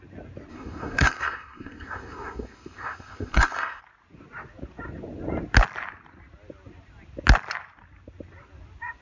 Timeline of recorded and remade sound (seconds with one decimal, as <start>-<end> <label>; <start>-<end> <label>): 0.0-0.5 recorded; 0.5-3.8 remade; 3.8-9.0 recorded